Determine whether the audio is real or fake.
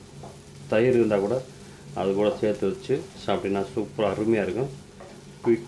real